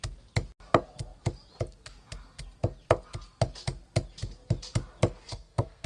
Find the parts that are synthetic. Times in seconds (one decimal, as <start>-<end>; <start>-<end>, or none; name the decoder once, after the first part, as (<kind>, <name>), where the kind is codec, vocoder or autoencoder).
5.3-5.9 (codec, SNAC)